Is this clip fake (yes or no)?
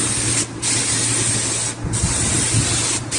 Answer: no